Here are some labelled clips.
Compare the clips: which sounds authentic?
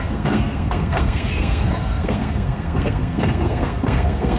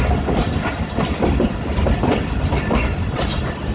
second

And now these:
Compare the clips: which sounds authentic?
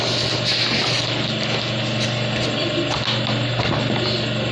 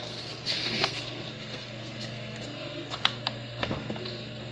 first